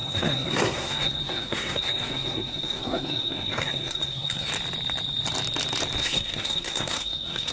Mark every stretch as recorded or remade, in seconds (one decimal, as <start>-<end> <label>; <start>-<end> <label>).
0.0-4.5 remade; 4.5-6.0 recorded; 6.0-7.5 remade